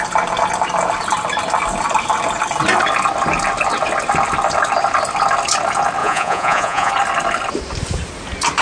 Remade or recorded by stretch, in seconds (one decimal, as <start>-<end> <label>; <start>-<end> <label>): 0.0-6.0 recorded; 6.0-6.9 remade; 6.9-8.6 recorded